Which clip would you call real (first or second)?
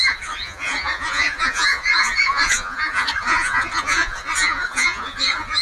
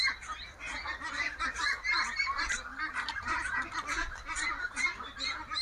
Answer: second